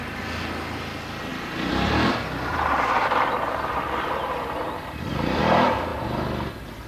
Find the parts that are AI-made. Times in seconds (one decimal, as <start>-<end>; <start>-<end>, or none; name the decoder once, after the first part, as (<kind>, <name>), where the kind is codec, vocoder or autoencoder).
1.3-5.4 (vocoder, BigVGAN v2)